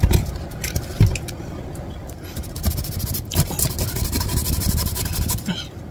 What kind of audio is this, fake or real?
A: real